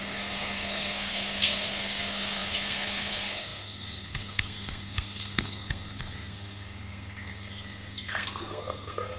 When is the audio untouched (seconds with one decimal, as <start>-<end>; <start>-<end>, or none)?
none